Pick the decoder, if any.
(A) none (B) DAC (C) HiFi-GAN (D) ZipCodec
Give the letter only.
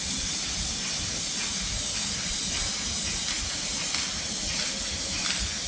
A